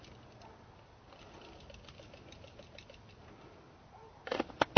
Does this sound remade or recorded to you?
recorded